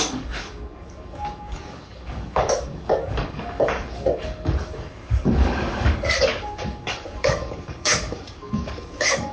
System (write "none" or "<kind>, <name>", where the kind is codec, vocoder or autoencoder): codec, DAC